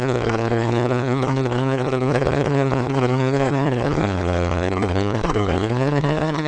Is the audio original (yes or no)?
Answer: no